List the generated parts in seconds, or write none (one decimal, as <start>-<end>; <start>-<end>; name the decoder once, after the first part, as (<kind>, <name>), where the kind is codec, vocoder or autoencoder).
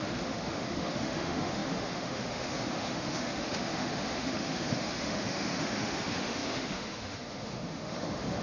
0.0-8.4 (autoencoder, DAC-VAE)